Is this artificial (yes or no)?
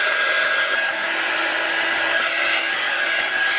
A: no